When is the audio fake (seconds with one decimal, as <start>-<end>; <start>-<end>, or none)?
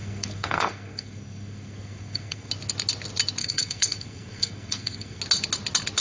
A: 0.0-2.5; 3.4-5.2